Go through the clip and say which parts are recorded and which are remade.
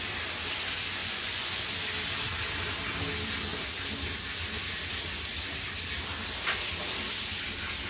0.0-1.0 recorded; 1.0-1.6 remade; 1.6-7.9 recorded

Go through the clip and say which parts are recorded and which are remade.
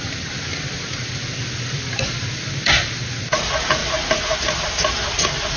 0.0-5.6 recorded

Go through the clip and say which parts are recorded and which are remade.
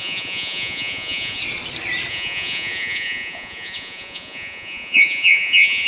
0.0-1.4 remade; 1.4-2.1 recorded; 2.1-5.9 remade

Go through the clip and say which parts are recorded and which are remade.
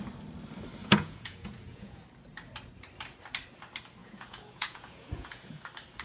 0.0-0.8 recorded; 0.8-2.0 remade; 2.0-4.0 recorded; 4.0-5.6 remade; 5.6-6.0 recorded